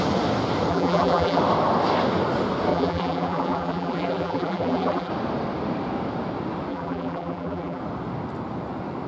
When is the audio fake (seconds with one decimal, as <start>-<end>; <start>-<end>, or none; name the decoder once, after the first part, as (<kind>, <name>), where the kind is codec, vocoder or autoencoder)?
0.7-1.4 (vocoder, BigVGAN v2); 2.7-5.1; 6.7-7.8